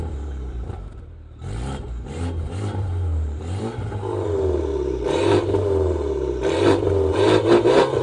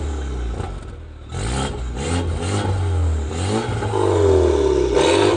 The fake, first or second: first